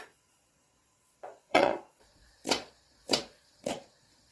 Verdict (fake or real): fake